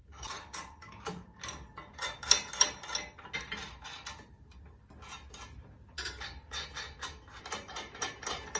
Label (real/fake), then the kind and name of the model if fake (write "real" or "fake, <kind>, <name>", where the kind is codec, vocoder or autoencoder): real